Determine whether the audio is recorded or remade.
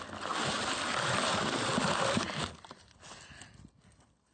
recorded